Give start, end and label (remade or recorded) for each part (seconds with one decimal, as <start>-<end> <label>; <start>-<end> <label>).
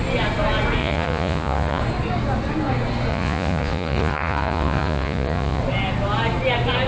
0.0-0.8 recorded; 0.8-1.8 remade; 1.8-3.1 recorded; 3.1-5.6 remade; 5.6-6.9 recorded